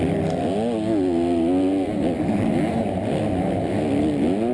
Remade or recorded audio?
recorded